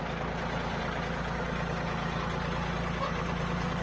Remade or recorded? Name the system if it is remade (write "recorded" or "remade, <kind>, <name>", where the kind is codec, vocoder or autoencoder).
recorded